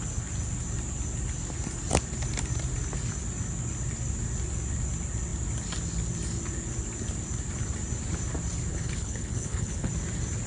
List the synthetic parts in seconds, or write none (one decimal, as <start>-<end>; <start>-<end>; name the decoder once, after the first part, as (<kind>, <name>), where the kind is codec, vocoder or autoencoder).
8.7-9.9 (codec, HILCodec)